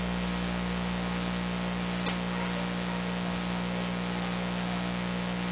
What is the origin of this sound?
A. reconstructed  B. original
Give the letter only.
B